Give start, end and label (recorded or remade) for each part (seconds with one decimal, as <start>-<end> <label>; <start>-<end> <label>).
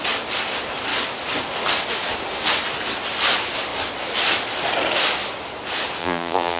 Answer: 0.0-6.0 recorded; 6.0-6.6 remade